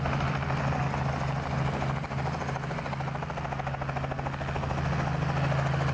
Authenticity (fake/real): real